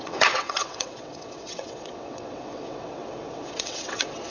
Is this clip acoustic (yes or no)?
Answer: no